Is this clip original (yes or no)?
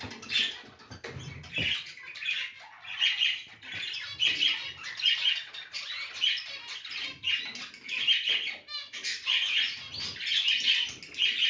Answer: yes